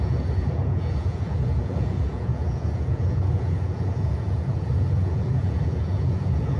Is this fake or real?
fake